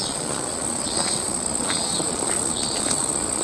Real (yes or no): no